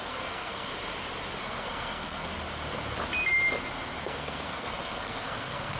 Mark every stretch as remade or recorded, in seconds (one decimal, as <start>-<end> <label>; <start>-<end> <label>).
0.0-0.7 remade; 0.7-1.4 recorded; 1.4-2.3 remade; 2.3-4.0 recorded; 4.0-5.8 remade